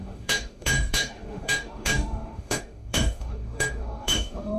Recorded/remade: remade